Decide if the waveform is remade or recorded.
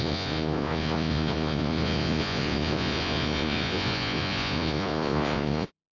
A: remade